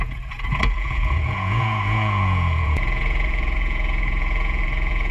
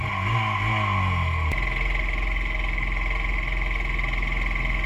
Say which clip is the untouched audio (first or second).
second